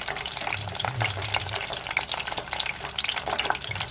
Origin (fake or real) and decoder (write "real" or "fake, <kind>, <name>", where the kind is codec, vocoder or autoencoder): real